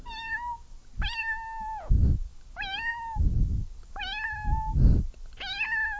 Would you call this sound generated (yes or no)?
no